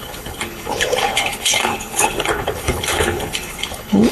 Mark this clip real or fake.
fake